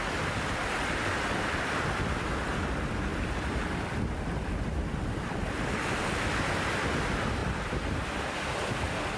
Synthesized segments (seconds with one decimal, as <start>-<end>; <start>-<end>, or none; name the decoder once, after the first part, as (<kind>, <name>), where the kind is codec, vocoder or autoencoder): 3.1-3.6 (vocoder, BigVGAN v2)